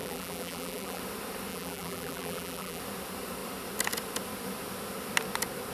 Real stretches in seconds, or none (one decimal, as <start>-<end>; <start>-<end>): 1.0-1.5; 2.8-5.7